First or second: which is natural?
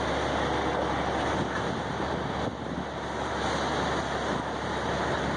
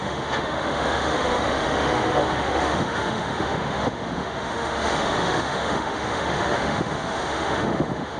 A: first